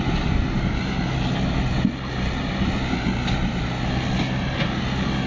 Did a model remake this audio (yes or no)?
no